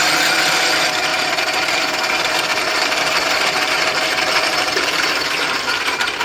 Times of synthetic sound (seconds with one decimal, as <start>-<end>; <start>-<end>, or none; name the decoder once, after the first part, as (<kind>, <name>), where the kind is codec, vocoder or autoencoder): 1.1-1.9 (vocoder, BigVGAN v2); 2.5-6.2